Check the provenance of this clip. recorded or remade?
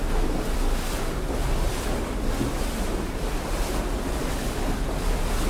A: recorded